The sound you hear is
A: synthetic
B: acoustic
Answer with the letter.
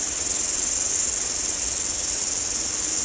B